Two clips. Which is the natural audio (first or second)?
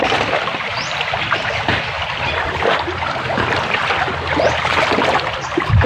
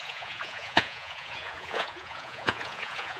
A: first